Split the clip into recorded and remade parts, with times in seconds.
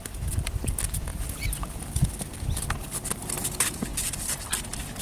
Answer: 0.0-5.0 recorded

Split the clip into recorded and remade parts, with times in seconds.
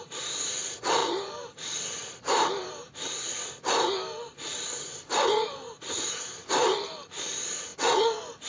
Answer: 0.0-7.7 remade; 7.7-8.5 recorded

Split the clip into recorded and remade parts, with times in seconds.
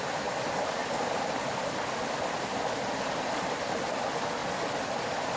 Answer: 0.0-5.4 recorded